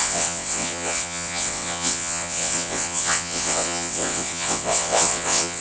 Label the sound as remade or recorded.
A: remade